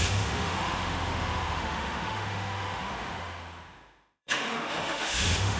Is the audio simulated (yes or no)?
yes